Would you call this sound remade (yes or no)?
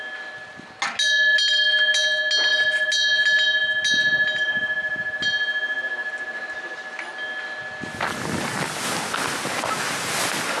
no